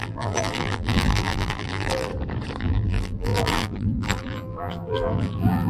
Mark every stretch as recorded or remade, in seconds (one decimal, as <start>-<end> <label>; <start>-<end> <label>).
0.0-2.1 remade; 2.1-2.6 recorded; 2.6-5.7 remade